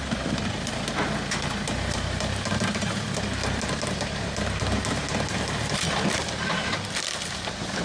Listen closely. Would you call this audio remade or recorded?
recorded